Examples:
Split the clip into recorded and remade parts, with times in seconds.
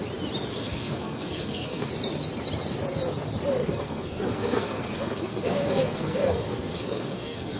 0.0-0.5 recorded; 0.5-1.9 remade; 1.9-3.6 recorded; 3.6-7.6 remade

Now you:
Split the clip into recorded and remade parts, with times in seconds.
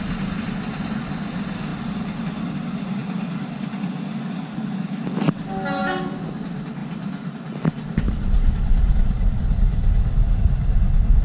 0.0-11.2 recorded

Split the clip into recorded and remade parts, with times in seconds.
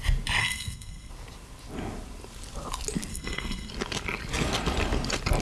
0.0-0.4 recorded; 0.4-1.1 remade; 1.1-3.1 recorded; 3.1-3.7 remade; 3.7-5.4 recorded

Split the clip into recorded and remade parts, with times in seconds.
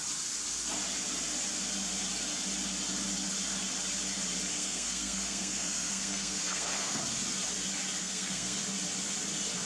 0.0-4.5 recorded; 4.5-7.0 remade; 7.0-8.0 recorded; 8.0-8.6 remade; 8.6-9.7 recorded